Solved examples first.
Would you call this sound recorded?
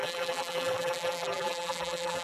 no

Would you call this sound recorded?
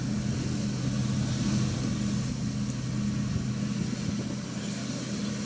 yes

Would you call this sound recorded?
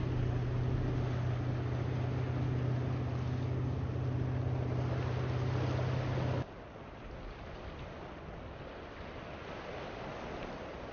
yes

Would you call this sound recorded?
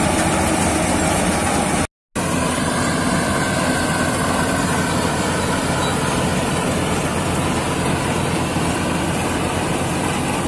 yes